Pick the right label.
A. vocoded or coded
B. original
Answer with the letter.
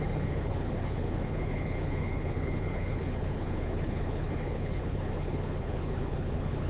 A